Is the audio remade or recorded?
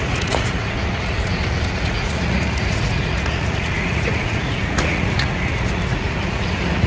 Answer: remade